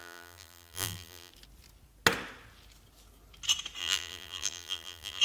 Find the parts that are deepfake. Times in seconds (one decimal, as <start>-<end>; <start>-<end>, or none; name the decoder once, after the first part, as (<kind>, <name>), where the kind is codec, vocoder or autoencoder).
0.0-1.3 (vocoder, BigVGAN v2); 3.8-5.2